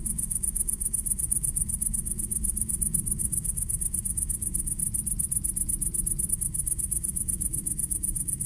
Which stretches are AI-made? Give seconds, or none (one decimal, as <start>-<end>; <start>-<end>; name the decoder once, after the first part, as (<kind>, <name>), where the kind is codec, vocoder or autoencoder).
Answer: 0.0-4.8 (autoencoder, DAC-VAE); 6.3-8.5